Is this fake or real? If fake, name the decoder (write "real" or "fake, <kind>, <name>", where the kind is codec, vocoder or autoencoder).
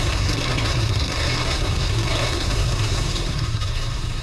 fake, codec, SNAC